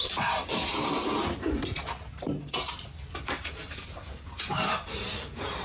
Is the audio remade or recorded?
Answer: remade